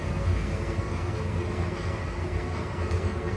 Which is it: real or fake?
fake